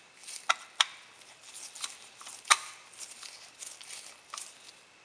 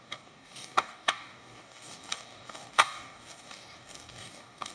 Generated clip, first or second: second